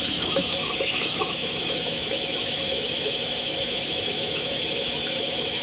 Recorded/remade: remade